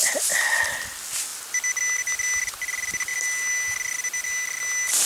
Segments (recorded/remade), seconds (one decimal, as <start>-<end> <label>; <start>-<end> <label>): 0.0-0.6 remade; 0.6-5.1 recorded